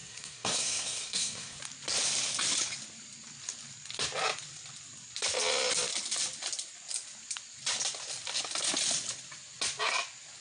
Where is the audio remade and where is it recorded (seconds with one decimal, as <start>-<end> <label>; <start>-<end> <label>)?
0.0-1.6 remade; 1.6-10.4 recorded